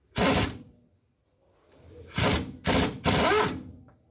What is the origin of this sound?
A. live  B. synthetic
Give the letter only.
A